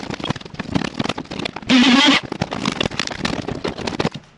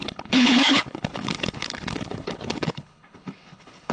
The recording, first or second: first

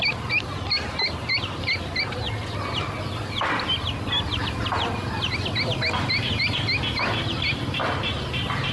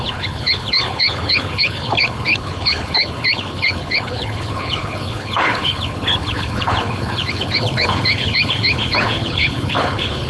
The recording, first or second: first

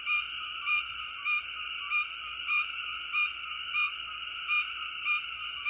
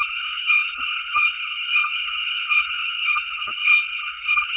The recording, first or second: first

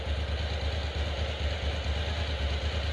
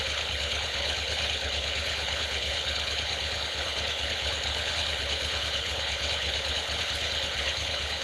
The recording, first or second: first